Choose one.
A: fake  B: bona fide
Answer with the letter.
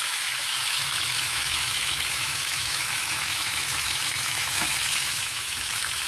A